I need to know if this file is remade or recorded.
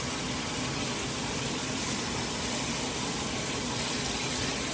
recorded